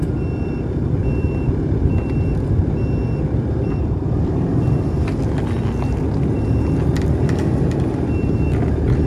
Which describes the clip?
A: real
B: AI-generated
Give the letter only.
A